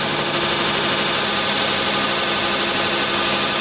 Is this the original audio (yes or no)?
yes